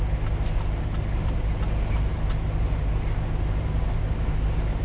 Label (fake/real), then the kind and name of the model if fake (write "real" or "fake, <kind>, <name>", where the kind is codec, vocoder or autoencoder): real